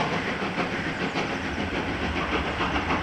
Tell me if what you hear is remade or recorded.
recorded